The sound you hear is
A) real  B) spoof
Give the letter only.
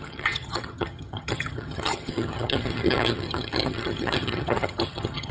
B